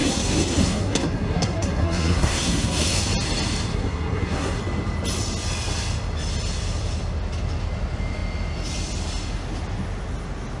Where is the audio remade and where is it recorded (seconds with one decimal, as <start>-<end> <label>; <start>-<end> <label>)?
0.0-3.0 remade; 3.0-3.7 recorded; 3.7-4.6 remade; 4.6-10.6 recorded